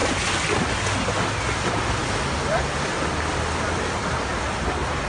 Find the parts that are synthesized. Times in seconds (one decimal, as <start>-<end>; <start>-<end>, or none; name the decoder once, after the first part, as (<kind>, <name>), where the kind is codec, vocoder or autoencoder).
none